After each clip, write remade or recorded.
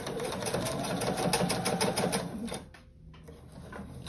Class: recorded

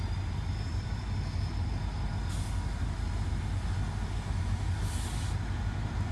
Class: recorded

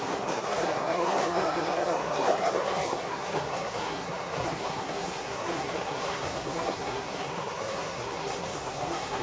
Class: remade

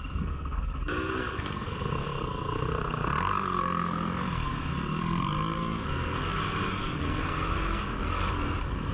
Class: remade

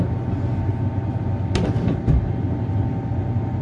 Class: recorded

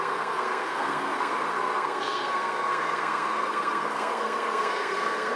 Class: remade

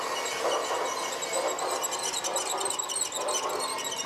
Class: recorded